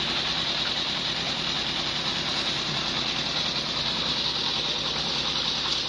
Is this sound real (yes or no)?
yes